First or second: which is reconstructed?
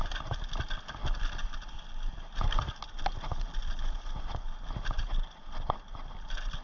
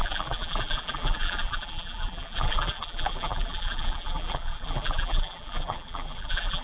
second